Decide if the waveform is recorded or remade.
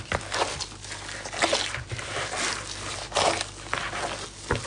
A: recorded